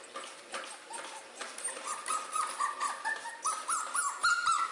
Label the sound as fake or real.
real